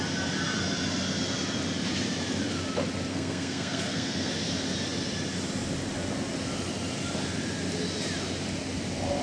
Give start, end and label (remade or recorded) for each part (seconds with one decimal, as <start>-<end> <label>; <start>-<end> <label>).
0.0-3.1 recorded; 3.1-4.3 remade; 4.3-9.2 recorded